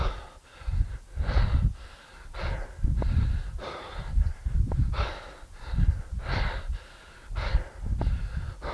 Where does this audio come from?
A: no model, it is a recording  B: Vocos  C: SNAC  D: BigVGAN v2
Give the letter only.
A